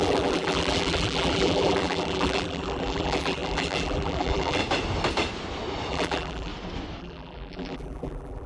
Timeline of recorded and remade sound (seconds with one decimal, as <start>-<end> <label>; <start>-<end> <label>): 0.0-4.6 remade; 4.6-5.9 recorded; 5.9-6.5 remade; 6.5-7.0 recorded; 7.0-8.5 remade

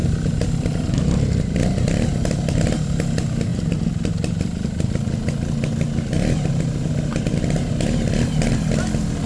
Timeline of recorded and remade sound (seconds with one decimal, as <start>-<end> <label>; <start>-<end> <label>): 0.0-9.3 recorded

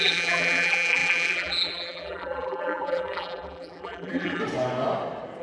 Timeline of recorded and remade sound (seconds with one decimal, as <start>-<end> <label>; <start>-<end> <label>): 0.0-4.4 remade; 4.4-5.4 recorded

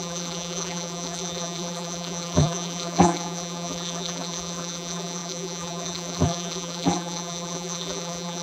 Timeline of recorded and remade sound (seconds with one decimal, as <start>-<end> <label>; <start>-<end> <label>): 0.0-8.4 remade

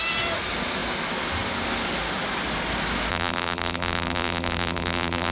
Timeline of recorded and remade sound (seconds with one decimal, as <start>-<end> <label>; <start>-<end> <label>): 0.0-3.1 recorded; 3.1-5.3 remade

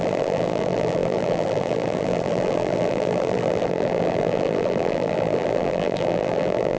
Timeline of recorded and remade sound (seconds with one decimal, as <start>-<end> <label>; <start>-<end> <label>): 0.0-6.8 remade

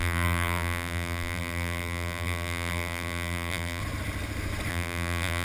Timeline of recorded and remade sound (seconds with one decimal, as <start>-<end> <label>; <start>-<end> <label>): 0.0-3.8 remade; 3.8-4.7 recorded; 4.7-5.4 remade

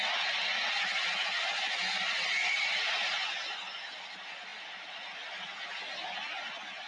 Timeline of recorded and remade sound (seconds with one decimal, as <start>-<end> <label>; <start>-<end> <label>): 0.0-6.9 recorded